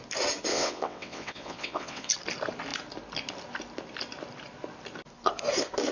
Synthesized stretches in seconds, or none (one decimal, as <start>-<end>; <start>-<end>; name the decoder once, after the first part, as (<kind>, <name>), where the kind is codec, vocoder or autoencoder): 0.5-2.1 (vocoder, WaveNeXt)